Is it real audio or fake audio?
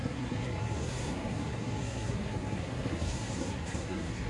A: fake